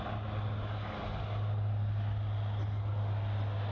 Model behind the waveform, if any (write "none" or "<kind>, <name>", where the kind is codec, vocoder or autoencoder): none